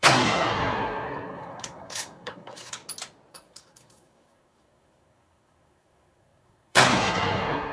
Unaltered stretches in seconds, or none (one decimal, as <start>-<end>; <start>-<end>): 2.8-3.3